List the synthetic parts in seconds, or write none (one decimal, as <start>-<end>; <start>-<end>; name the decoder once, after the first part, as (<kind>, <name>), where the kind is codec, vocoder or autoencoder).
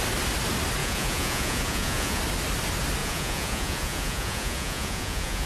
0.8-2.2 (vocoder, Vocos); 3.0-5.5